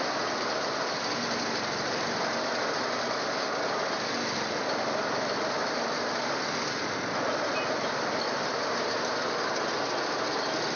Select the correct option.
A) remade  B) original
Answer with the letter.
B